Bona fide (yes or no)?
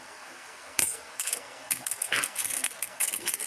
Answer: no